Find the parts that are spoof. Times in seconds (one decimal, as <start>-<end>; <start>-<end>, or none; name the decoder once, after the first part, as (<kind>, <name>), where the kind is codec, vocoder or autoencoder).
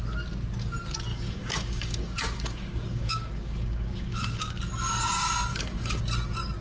1.1-4.6 (codec, DAC); 5.5-6.0